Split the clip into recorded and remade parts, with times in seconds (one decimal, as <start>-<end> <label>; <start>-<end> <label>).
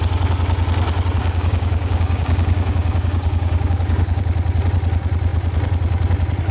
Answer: 0.0-1.2 recorded; 1.2-4.2 remade; 4.2-6.5 recorded